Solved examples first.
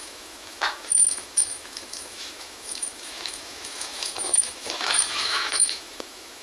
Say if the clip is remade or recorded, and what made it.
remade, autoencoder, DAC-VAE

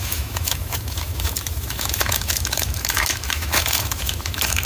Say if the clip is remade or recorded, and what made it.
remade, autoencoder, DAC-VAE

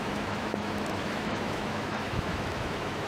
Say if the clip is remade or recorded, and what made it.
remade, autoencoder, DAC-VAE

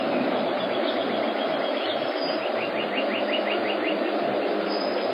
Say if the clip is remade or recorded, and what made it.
recorded